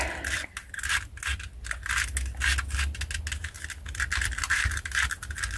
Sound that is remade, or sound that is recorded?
recorded